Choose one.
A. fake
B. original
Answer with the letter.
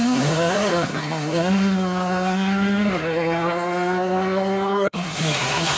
A